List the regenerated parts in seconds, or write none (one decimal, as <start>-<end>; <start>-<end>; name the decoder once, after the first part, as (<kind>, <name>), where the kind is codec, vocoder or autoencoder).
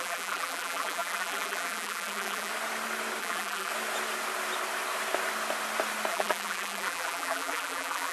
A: 0.0-2.5 (vocoder, BigVGAN v2); 3.2-3.7; 6.1-8.1